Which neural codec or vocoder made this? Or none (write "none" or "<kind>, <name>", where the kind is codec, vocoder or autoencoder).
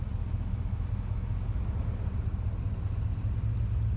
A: none